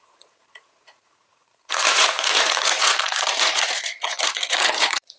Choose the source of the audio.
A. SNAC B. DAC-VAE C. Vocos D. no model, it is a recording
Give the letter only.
C